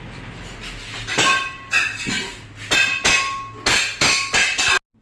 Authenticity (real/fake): real